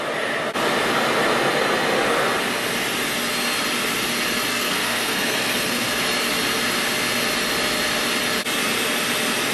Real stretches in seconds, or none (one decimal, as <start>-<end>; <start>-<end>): 0.0-4.5; 6.0-9.5